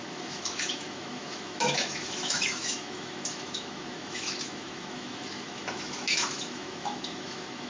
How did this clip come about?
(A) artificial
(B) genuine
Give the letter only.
A